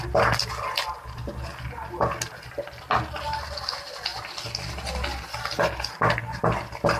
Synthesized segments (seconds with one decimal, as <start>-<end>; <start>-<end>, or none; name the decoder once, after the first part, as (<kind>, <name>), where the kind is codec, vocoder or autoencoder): none